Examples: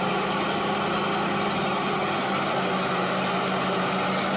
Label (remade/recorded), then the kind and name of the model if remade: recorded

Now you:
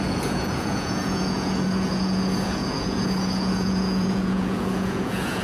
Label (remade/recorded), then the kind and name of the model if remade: remade, vocoder, Vocos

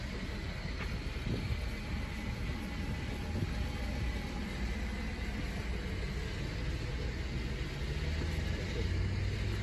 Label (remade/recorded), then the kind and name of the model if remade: recorded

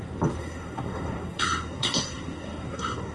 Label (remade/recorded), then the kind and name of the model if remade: remade, codec, SNAC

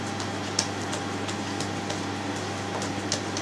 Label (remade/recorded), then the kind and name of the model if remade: recorded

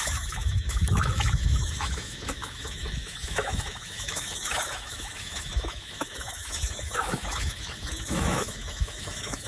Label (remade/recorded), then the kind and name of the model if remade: remade, autoencoder, DAC-VAE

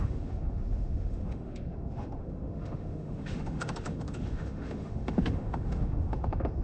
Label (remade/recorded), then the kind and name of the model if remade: remade, autoencoder, DAC-VAE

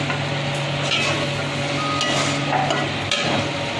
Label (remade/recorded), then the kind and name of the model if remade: recorded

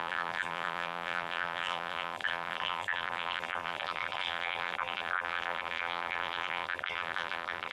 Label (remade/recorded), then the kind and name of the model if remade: remade, vocoder, BigVGAN v2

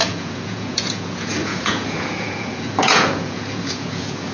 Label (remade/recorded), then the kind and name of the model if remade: remade, vocoder, Vocos